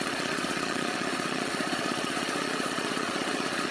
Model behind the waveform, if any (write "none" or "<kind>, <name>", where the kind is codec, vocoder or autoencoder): vocoder, Vocos